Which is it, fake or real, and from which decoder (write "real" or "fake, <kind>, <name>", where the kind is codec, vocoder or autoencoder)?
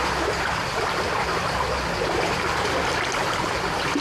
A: real